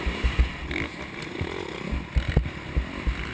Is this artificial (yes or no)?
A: no